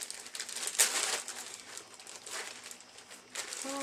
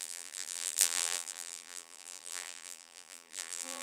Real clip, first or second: first